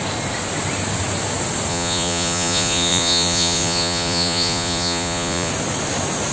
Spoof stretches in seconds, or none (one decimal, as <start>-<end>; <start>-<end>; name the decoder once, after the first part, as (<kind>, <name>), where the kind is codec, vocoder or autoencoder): 1.7-5.5 (vocoder, Vocos)